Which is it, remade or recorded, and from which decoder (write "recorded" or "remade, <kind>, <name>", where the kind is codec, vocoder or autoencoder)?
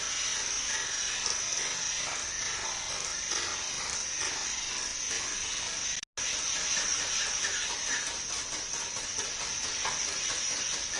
recorded